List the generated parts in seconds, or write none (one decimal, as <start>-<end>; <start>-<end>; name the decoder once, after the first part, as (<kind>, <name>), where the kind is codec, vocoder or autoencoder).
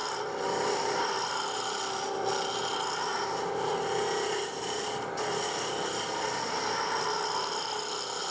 0.0-2.3 (vocoder, BigVGAN v2); 3.1-4.8